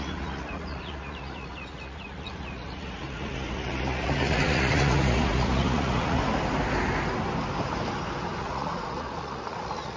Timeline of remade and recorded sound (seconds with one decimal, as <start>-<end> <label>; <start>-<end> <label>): 0.0-6.2 remade; 6.2-8.4 recorded; 8.4-10.0 remade